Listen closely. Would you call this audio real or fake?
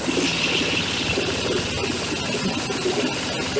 real